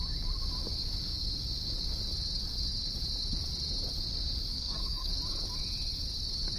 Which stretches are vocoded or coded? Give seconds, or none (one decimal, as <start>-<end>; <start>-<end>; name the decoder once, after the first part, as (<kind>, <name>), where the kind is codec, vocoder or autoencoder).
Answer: 4.5-5.2 (codec, SNAC)